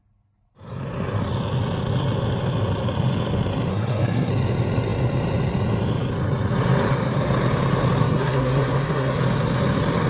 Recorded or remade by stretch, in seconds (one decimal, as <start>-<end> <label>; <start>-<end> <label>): 0.0-3.7 recorded; 3.7-4.3 remade; 4.3-8.0 recorded; 8.0-9.2 remade; 9.2-10.1 recorded